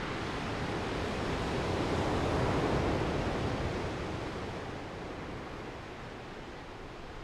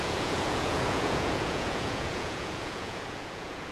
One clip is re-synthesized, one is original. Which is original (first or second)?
first